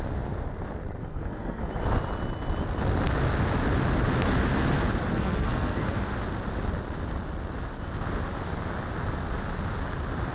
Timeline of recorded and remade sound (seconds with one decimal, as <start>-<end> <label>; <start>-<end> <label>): 0.0-1.0 recorded; 1.0-1.6 remade; 1.6-5.1 recorded; 5.1-6.0 remade; 6.0-10.3 recorded